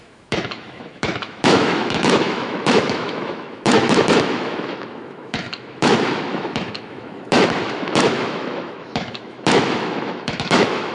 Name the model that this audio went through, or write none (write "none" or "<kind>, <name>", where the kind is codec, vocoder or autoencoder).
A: autoencoder, DAC-VAE